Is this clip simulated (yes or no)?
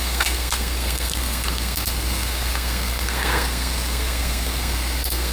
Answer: yes